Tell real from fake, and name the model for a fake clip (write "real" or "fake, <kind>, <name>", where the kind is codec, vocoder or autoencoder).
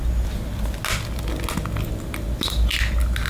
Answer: real